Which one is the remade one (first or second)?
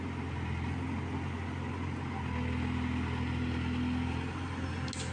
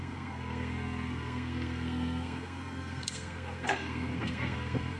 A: second